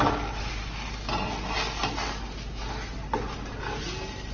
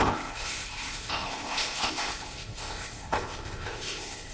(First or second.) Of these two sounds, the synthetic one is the second